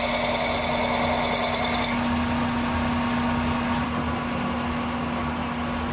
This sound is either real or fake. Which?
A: real